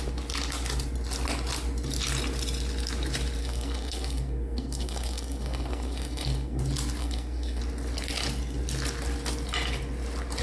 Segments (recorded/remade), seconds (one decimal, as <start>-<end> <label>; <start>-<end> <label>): 0.0-3.4 recorded; 3.4-6.6 remade; 6.6-7.0 recorded; 7.0-7.6 remade; 7.6-10.4 recorded